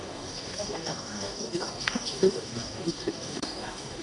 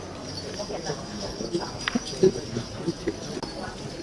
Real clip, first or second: second